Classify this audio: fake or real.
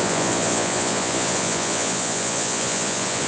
fake